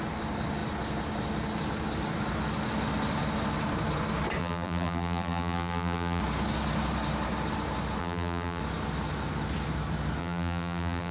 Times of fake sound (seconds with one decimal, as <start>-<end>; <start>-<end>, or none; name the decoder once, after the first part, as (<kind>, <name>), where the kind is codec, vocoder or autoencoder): 4.4-6.2 (vocoder, BigVGAN v2); 8.0-8.6; 10.2-11.1